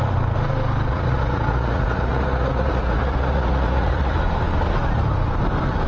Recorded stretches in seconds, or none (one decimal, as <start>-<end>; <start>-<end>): 0.0-0.9; 4.1-5.9